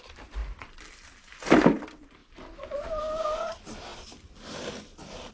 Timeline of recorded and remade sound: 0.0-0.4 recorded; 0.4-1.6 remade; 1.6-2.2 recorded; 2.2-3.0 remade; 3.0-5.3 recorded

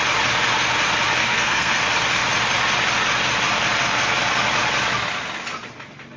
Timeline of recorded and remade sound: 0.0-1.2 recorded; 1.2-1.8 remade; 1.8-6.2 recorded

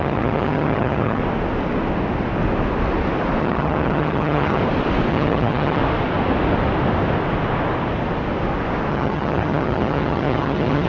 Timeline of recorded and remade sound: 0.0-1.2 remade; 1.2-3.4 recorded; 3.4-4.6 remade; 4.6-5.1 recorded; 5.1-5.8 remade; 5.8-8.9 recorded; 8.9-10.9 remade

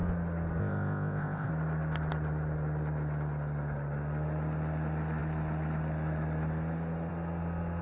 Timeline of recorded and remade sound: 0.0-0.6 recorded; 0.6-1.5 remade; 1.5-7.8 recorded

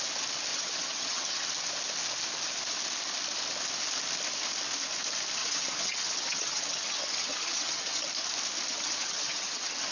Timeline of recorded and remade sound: 0.0-0.5 recorded; 0.5-1.4 remade; 1.4-5.4 recorded; 5.4-8.1 remade; 8.1-8.7 recorded; 8.7-9.9 remade